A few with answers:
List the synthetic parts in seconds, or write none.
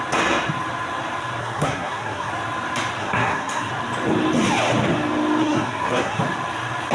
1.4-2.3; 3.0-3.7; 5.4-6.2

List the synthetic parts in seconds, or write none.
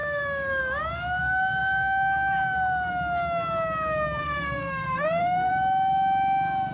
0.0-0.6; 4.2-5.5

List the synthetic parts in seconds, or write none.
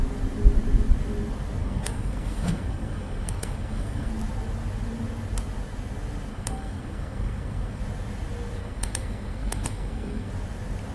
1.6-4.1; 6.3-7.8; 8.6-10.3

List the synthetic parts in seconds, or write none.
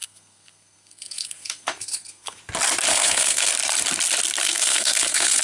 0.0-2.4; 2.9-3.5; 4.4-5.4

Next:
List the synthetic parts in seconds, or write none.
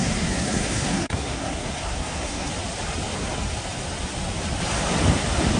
0.0-2.5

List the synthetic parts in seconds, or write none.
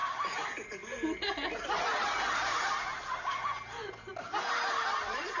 none